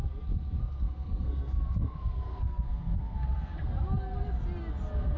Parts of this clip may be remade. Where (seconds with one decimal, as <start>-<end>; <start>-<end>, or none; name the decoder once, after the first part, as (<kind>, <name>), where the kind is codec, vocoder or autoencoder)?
0.6-3.7 (codec, SNAC)